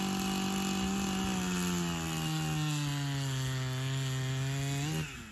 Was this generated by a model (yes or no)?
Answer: no